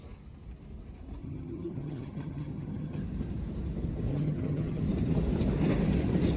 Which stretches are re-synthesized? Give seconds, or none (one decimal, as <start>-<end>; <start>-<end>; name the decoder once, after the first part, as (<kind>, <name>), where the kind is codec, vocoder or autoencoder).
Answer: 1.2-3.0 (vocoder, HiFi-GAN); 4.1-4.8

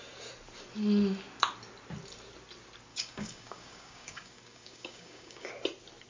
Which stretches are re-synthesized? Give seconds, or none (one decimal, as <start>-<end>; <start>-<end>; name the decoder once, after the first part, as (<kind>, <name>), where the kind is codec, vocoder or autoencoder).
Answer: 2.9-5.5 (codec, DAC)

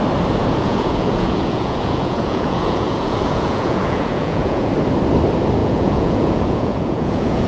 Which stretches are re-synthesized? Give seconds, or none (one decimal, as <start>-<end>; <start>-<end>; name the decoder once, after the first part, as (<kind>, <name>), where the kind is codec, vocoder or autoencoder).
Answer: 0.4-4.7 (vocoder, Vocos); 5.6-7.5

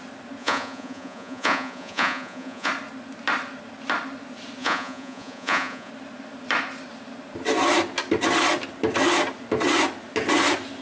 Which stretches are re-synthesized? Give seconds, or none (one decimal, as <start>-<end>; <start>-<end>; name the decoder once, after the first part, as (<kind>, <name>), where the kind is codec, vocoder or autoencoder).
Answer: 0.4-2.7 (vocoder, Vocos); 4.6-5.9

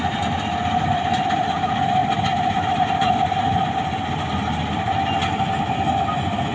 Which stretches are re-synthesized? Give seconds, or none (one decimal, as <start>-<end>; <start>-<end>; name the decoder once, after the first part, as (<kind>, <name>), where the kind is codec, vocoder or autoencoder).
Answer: 2.0-3.1 (vocoder, BigVGAN v2)